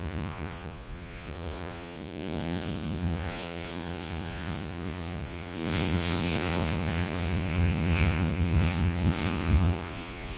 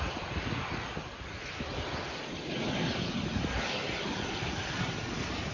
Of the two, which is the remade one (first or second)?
first